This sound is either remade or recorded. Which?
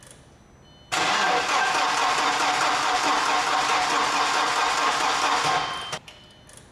recorded